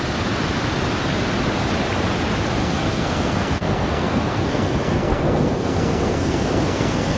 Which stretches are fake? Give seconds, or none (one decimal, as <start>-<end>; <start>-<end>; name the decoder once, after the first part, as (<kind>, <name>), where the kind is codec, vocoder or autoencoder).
2.6-7.2 (codec, SNAC)